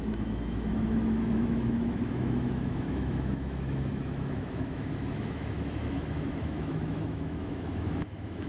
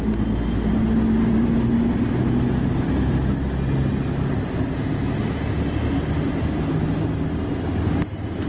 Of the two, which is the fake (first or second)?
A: first